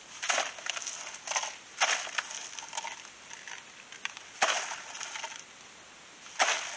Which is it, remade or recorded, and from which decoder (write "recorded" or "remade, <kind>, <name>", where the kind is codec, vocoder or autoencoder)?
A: recorded